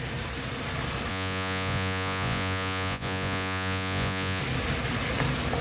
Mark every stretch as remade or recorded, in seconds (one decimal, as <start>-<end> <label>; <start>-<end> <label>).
0.0-1.1 recorded; 1.1-4.4 remade; 4.4-5.6 recorded